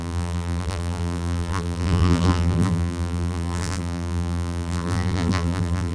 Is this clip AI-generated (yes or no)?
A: yes